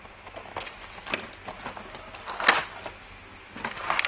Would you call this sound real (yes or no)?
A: yes